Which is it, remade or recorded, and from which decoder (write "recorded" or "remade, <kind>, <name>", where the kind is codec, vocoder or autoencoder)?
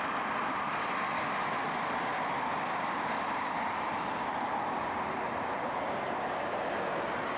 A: recorded